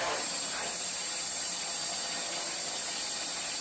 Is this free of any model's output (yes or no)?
yes